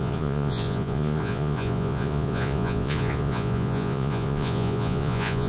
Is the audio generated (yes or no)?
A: yes